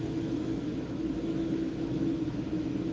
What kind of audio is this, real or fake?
fake